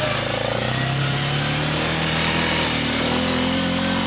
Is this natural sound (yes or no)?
yes